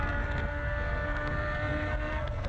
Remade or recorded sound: remade